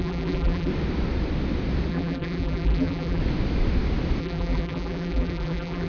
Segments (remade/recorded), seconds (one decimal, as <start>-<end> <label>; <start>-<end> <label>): 0.0-0.7 remade; 0.7-1.9 recorded; 1.9-3.2 remade; 3.2-4.2 recorded; 4.2-5.9 remade

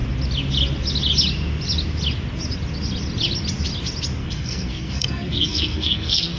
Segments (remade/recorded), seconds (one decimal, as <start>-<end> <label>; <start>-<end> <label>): 0.0-4.2 recorded; 4.2-6.4 remade

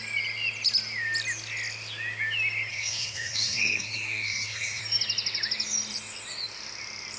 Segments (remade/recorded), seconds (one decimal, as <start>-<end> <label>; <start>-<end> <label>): 0.0-2.7 recorded; 2.7-4.8 remade; 4.8-7.2 recorded

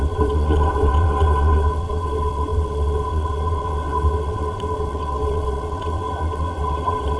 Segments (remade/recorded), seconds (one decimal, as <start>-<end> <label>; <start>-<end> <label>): 0.0-7.2 remade

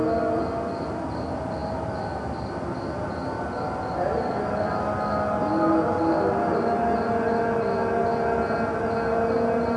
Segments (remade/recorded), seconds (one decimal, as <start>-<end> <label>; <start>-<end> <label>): 0.0-9.8 recorded

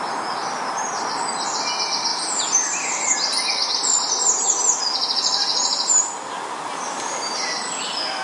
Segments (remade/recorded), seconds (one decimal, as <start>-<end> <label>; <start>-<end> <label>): 0.0-2.1 recorded; 2.1-3.0 remade; 3.0-5.5 recorded; 5.5-6.1 remade; 6.1-8.2 recorded

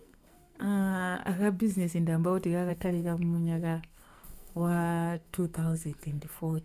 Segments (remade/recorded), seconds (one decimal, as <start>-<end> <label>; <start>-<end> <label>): 0.0-1.2 remade; 1.2-2.7 recorded; 2.7-6.6 remade